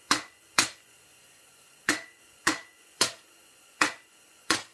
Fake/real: fake